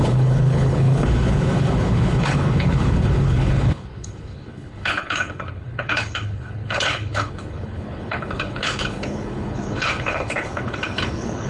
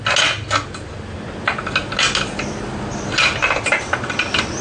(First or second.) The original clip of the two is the second